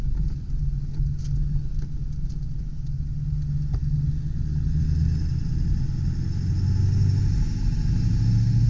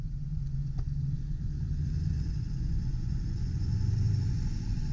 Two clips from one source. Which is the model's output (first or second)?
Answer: second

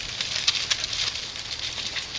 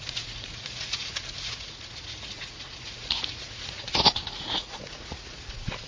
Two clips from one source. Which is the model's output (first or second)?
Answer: second